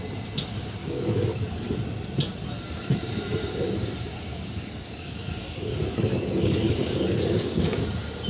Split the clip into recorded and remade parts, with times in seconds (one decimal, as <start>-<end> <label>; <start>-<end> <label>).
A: 0.0-0.8 recorded; 0.8-1.7 remade; 1.7-4.3 recorded; 4.3-7.8 remade; 7.8-8.3 recorded